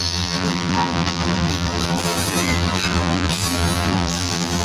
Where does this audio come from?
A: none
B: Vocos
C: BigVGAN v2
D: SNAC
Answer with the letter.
C